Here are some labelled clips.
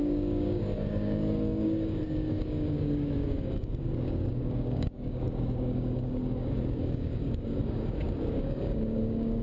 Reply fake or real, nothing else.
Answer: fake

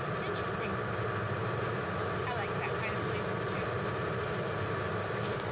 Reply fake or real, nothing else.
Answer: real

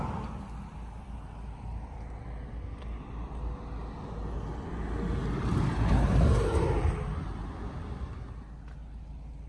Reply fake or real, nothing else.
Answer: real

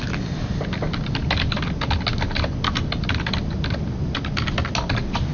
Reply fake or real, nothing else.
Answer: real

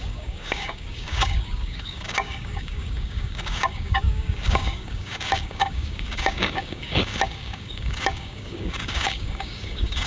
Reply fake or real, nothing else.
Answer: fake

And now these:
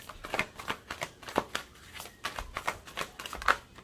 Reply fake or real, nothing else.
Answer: real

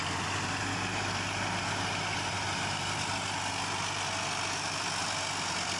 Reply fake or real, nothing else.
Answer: real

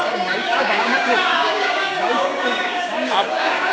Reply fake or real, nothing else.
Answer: fake